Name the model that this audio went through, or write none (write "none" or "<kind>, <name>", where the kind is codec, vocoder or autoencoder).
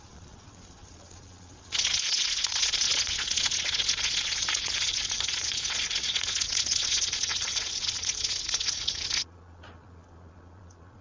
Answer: vocoder, Vocos